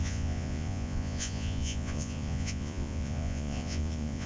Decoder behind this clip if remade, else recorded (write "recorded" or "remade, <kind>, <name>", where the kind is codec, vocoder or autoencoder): remade, vocoder, Vocos